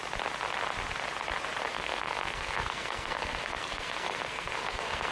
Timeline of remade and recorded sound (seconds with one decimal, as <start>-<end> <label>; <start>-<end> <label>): 0.0-1.7 recorded; 1.7-5.1 remade